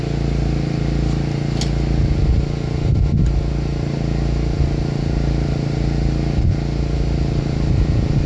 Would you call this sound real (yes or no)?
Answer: yes